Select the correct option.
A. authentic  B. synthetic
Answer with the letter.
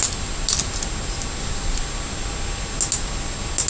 A